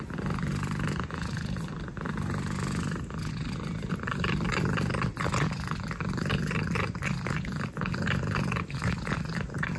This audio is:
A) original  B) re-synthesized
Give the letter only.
A